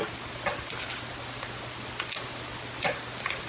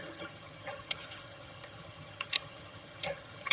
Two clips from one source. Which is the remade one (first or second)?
second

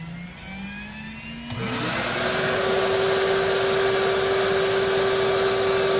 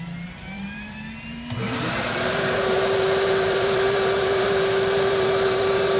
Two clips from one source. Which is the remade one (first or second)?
second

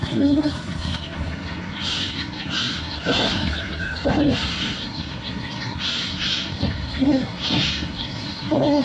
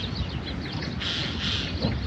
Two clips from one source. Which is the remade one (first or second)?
first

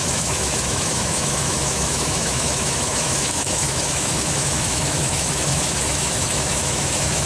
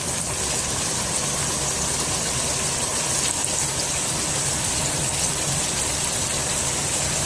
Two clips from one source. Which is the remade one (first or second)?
first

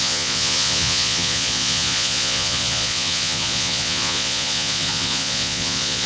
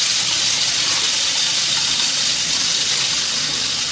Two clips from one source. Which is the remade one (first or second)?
first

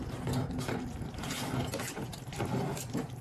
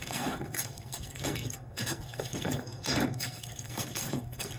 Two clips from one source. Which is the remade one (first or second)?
second